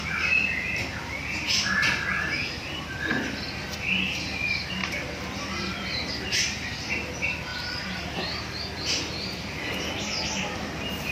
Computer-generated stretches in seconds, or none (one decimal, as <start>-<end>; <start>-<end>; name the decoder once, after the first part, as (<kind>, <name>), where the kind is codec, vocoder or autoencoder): 4.8-5.7 (vocoder, BigVGAN v2); 7.5-8.2